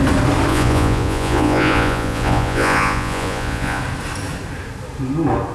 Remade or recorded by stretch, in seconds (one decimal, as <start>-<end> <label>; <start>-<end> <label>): 0.0-0.5 recorded; 0.5-3.8 remade; 3.8-5.5 recorded